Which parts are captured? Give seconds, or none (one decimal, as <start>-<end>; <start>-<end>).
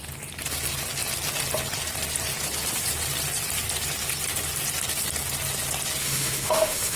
0.0-6.0